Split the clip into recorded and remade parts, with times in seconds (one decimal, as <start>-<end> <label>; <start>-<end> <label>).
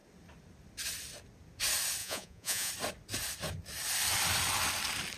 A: 0.0-2.0 recorded; 2.0-2.7 remade; 2.7-5.2 recorded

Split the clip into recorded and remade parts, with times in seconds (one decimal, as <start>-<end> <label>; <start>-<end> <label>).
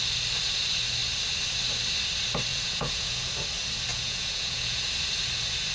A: 0.0-2.5 recorded; 2.5-3.3 remade; 3.3-3.9 recorded; 3.9-4.9 remade; 4.9-5.7 recorded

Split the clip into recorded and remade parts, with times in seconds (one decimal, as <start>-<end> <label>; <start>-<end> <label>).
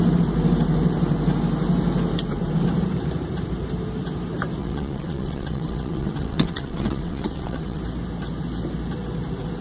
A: 0.0-4.6 recorded; 4.6-7.8 remade; 7.8-9.6 recorded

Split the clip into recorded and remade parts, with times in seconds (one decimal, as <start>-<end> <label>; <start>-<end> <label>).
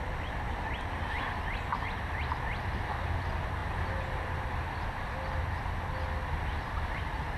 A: 0.0-7.4 recorded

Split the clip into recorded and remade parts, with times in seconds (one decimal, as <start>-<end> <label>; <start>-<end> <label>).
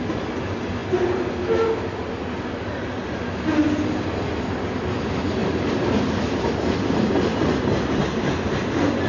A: 0.0-9.1 recorded